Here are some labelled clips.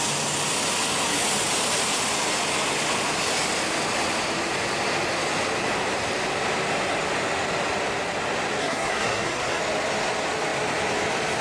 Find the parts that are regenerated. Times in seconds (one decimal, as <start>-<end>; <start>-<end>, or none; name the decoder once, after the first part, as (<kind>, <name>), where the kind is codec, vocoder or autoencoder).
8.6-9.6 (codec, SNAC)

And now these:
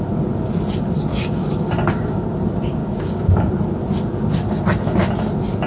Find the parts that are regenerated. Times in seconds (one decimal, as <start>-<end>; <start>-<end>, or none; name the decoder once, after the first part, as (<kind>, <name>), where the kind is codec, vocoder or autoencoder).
1.1-1.7 (codec, DAC); 2.8-3.5

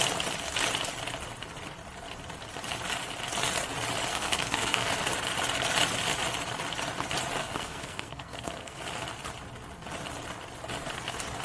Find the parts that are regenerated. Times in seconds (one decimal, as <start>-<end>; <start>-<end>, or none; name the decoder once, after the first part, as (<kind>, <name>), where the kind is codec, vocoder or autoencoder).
4.1-4.9 (codec, SNAC); 7.4-8.8

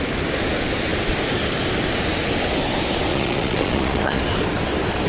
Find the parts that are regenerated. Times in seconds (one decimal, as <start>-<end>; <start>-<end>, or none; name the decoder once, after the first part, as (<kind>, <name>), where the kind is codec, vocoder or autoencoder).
3.1-4.2 (vocoder, Vocos)

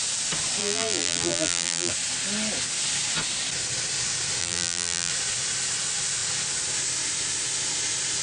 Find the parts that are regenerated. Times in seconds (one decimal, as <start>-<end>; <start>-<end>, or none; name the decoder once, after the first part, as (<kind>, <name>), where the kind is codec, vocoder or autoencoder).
0.6-1.9 (vocoder, BigVGAN v2); 4.4-5.1